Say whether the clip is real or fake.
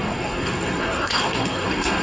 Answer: fake